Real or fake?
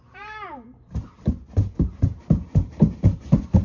fake